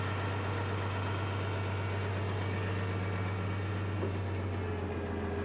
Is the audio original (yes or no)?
yes